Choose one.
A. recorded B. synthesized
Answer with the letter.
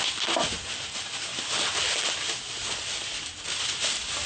A